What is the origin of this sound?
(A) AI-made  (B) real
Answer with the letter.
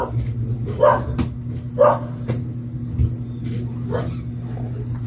B